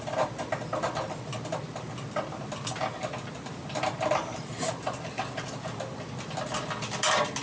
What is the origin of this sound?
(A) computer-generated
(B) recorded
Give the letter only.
B